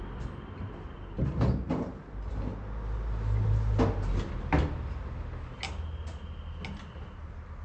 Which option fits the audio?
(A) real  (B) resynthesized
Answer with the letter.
A